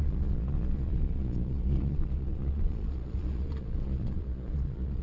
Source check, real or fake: fake